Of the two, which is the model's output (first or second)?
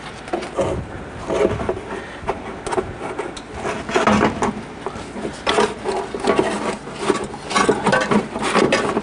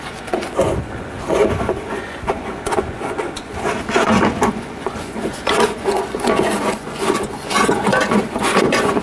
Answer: second